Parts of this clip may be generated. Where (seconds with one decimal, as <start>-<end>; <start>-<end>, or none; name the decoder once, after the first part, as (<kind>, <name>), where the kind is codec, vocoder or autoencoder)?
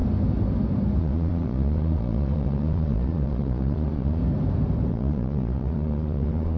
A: 1.0-4.2 (vocoder, Vocos); 4.9-6.6